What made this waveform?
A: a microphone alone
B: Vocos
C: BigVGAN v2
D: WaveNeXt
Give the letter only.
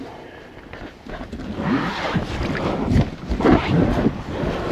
A